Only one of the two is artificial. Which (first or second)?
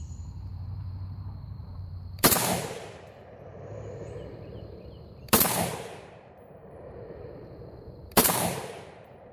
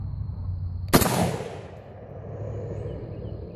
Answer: first